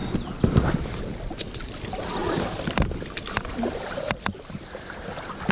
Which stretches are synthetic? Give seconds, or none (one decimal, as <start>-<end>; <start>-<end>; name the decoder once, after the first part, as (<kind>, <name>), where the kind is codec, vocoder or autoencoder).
none